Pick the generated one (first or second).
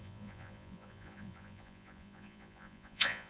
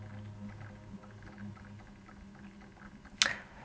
first